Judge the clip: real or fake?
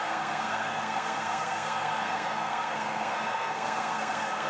fake